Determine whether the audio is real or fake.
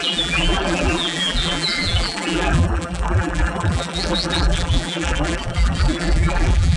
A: fake